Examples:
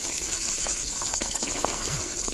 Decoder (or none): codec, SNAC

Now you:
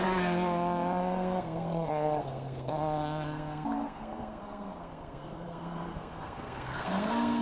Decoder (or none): codec, SNAC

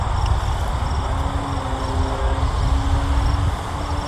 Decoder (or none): none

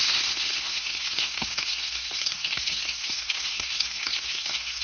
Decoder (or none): codec, SNAC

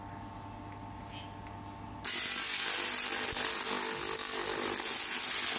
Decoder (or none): none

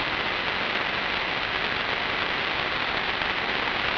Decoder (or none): none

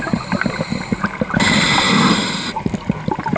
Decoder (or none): none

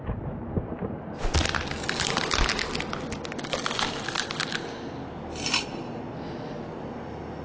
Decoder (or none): none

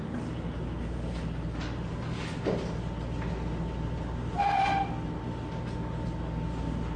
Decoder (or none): none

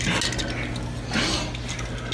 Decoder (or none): none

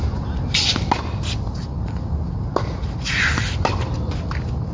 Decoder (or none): none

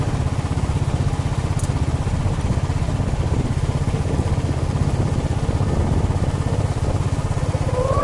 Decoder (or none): none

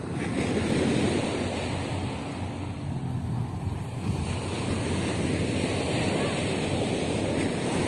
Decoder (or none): none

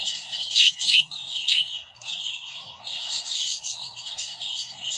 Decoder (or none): codec, SNAC